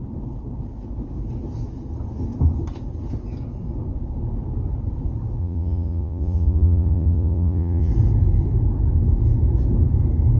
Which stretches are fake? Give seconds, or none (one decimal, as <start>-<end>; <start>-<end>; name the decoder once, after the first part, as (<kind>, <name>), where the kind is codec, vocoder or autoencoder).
5.4-7.9 (vocoder, Vocos)

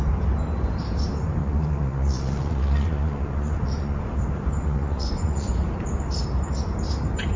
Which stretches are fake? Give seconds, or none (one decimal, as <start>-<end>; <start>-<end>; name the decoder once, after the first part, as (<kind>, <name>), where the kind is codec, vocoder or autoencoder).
1.4-4.0 (vocoder, Vocos); 4.6-5.5

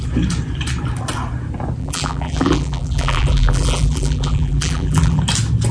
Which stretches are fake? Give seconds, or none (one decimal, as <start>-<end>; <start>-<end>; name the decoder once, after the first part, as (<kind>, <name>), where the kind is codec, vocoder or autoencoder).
1.8-5.2 (vocoder, BigVGAN v2)